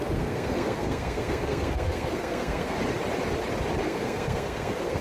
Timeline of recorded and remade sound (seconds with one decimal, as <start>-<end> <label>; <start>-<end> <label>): 0.0-2.8 remade; 2.8-3.8 recorded; 3.8-5.0 remade